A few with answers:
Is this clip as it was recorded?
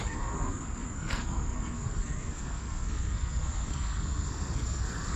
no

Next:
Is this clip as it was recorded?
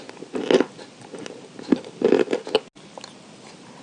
yes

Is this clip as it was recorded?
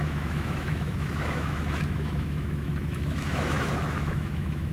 no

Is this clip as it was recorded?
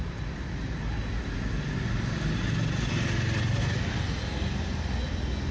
yes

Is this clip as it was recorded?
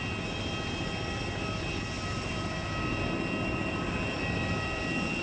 yes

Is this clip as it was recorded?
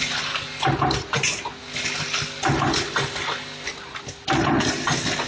yes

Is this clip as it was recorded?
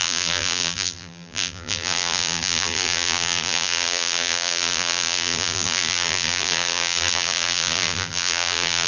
no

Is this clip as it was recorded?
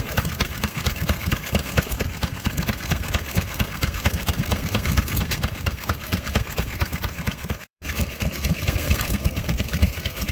no